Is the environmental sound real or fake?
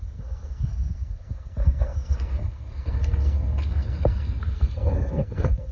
fake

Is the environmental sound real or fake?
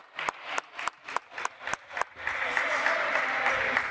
real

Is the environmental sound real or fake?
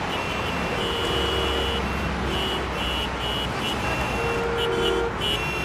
real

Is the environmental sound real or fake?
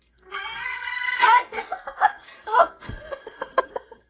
fake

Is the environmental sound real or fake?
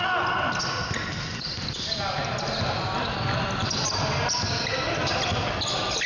real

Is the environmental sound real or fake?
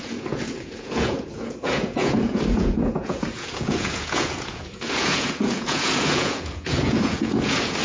fake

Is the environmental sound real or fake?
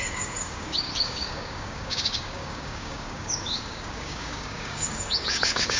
fake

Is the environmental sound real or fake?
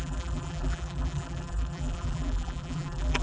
fake